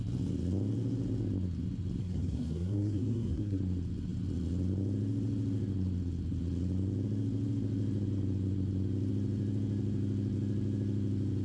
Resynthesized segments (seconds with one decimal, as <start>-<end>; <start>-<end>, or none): 2.0-3.6